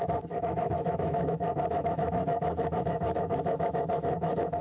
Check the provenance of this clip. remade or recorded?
remade